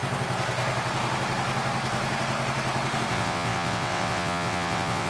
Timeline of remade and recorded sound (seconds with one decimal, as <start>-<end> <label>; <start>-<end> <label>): 0.0-3.1 recorded; 3.1-5.1 remade